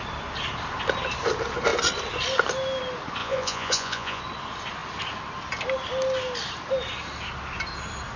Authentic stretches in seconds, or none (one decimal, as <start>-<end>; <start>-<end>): 0.0-3.2; 4.2-8.2